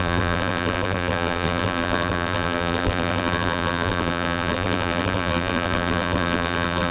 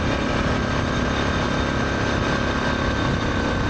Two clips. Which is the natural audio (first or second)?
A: second